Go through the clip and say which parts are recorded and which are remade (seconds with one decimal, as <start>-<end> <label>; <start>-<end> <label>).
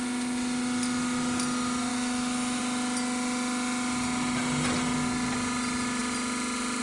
0.0-1.9 recorded; 1.9-2.6 remade; 2.6-6.8 recorded